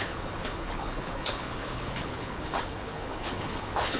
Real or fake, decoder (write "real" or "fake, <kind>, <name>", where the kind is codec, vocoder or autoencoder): fake, codec, HILCodec